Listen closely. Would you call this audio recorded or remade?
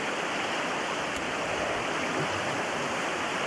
recorded